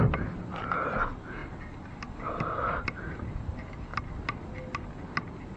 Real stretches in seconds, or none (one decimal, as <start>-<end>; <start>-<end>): 0.0-5.6